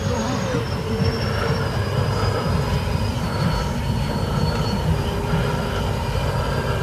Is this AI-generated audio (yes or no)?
yes